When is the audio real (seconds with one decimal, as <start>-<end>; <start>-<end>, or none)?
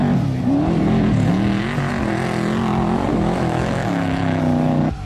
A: 0.0-3.1; 4.4-5.1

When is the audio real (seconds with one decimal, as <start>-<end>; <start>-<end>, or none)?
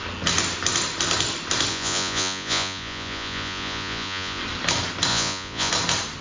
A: 0.0-1.7; 4.4-5.1; 5.7-6.2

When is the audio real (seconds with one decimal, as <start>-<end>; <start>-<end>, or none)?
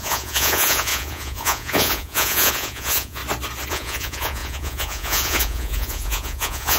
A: 3.2-3.7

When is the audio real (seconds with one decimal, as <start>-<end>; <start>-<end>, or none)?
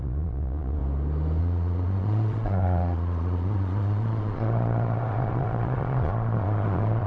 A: 0.8-1.4